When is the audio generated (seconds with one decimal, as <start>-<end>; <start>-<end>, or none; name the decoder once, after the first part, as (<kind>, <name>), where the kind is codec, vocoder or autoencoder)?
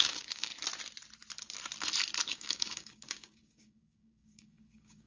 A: 0.0-0.5 (codec, DAC); 2.3-5.1